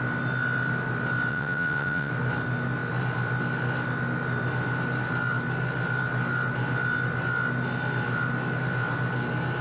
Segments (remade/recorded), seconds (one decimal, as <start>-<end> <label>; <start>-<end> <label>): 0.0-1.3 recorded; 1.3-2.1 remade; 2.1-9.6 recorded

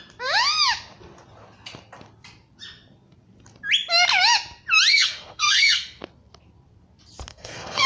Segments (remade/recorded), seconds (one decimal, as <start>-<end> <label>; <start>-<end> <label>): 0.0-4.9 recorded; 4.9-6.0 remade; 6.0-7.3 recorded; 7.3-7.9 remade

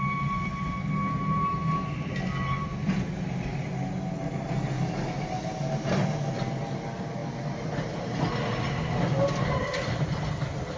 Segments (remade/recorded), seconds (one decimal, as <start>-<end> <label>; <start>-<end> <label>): 0.0-10.8 recorded

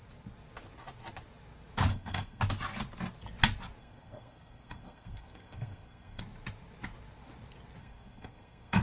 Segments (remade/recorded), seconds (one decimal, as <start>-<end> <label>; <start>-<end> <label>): 0.0-1.9 recorded; 1.9-2.4 remade; 2.4-3.8 recorded; 3.8-6.2 remade; 6.2-7.8 recorded; 7.8-8.8 remade